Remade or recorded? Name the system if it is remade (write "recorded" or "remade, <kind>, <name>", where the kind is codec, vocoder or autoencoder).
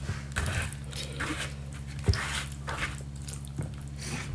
recorded